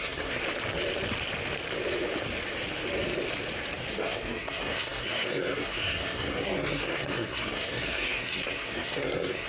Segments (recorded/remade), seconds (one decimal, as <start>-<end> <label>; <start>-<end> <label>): 0.0-0.4 remade; 0.4-3.9 recorded; 3.9-9.5 remade

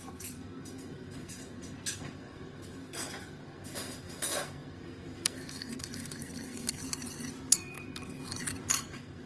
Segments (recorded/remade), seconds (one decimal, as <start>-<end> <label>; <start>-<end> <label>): 0.0-6.8 remade; 6.8-7.5 recorded; 7.5-8.2 remade; 8.2-8.7 recorded; 8.7-9.3 remade